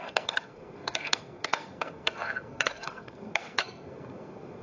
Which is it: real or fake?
fake